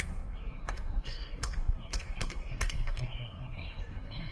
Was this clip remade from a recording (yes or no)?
yes